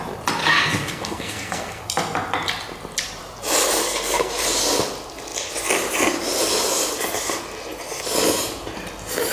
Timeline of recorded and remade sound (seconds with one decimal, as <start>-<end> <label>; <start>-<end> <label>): 0.0-0.4 recorded; 0.4-1.8 remade; 1.8-3.8 recorded; 3.8-4.3 remade; 4.3-9.3 recorded

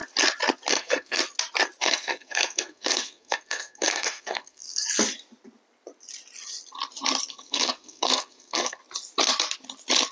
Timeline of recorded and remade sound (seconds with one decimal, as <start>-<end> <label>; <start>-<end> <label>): 0.0-0.7 recorded; 0.7-1.2 remade; 1.2-1.8 recorded; 1.8-4.8 remade; 4.8-7.3 recorded; 7.3-8.8 remade; 8.8-10.1 recorded

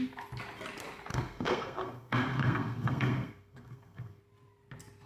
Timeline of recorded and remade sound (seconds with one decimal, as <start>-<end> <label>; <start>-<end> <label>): 0.0-1.1 recorded; 1.1-4.2 remade; 4.2-5.1 recorded

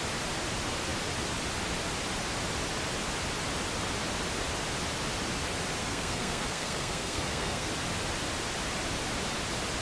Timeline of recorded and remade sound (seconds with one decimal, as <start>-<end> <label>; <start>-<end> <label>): 0.0-5.8 recorded; 5.8-7.7 remade; 7.7-9.8 recorded

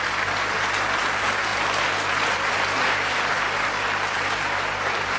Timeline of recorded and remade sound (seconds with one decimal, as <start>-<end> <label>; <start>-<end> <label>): 0.0-5.2 recorded

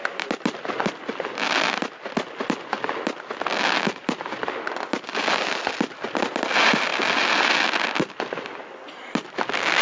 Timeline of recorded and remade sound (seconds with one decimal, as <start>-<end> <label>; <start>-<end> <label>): 0.0-9.8 recorded